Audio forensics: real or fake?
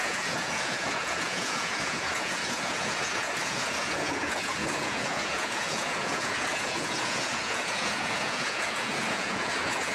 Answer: fake